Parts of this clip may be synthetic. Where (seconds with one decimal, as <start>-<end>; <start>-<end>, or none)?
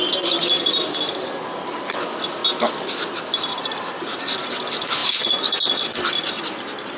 none